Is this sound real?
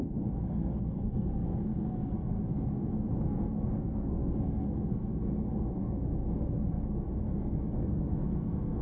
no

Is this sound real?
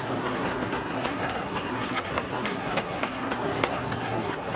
no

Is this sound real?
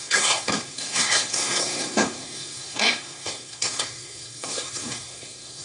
no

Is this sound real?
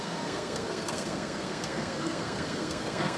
no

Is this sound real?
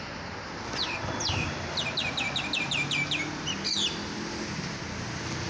yes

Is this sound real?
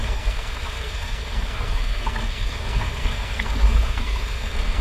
no